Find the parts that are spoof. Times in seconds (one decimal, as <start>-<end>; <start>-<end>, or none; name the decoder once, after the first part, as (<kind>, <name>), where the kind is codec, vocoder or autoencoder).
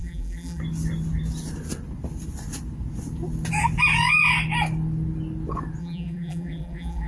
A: 0.0-0.6 (vocoder, BigVGAN v2); 5.8-7.1